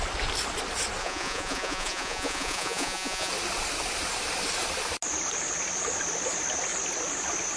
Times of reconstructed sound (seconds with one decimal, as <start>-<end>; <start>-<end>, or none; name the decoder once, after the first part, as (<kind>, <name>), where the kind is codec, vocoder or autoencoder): 1.0-3.3 (vocoder, Vocos)